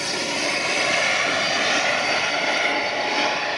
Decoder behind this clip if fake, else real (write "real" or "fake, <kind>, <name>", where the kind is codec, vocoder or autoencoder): fake, vocoder, BigVGAN v2